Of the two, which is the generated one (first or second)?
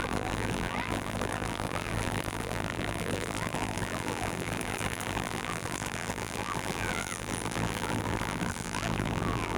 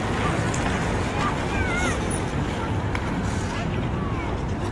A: first